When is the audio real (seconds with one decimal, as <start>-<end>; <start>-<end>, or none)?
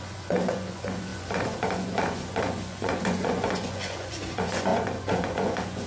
none